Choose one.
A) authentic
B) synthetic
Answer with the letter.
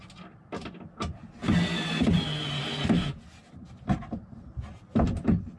A